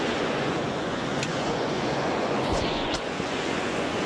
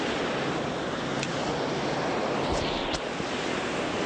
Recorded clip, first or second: second